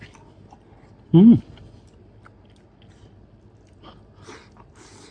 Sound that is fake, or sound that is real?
real